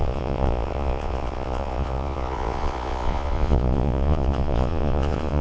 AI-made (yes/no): yes